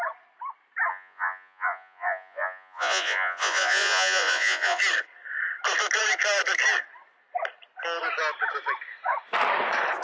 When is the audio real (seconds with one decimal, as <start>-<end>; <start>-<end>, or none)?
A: 0.0-0.9; 4.8-10.0

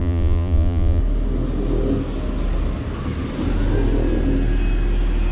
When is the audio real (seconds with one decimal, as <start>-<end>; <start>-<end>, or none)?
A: 1.0-5.3

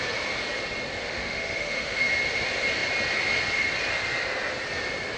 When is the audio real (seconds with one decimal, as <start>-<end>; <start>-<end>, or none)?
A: 0.0-1.0; 2.1-5.2

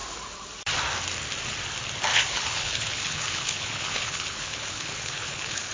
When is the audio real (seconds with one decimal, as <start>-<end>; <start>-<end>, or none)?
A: 0.0-2.1

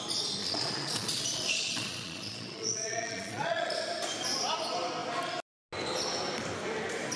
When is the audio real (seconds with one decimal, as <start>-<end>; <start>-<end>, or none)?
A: 0.0-0.4; 3.7-7.2

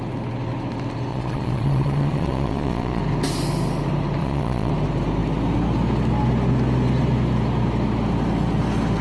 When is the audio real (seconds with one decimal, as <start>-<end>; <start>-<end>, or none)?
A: 0.0-1.1; 3.0-4.2; 4.7-9.0

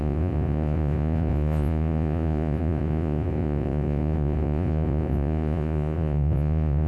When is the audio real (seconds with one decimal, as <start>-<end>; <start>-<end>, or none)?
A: none